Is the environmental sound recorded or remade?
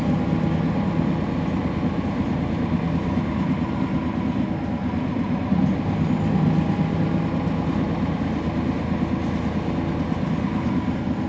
recorded